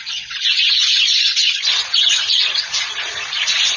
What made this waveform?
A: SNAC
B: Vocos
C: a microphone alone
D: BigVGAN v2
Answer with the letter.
B